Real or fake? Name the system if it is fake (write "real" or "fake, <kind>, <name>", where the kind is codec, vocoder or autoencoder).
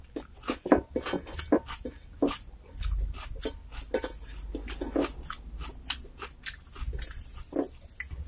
real